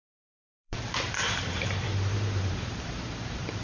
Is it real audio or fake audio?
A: fake